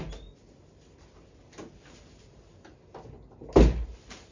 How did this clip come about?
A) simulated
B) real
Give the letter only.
B